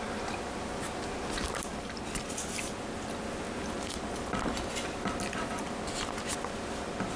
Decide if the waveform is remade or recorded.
recorded